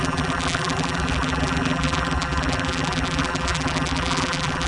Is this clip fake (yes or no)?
yes